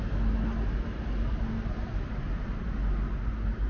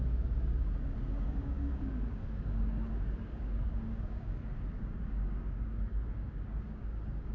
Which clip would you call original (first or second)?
first